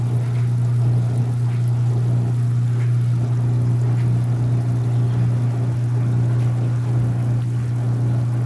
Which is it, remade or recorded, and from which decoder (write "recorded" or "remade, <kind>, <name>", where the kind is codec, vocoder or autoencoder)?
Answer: recorded